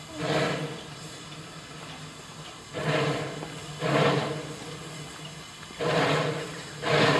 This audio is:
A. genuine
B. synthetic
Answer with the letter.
A